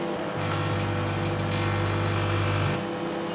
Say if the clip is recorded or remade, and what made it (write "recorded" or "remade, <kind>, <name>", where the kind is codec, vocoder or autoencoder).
recorded